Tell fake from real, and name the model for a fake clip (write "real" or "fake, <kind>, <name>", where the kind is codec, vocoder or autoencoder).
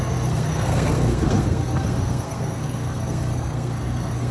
fake, codec, SNAC